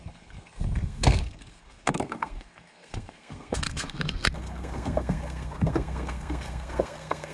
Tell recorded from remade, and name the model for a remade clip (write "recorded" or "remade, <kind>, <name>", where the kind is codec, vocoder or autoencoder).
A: remade, codec, SNAC